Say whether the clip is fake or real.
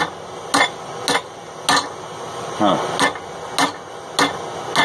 real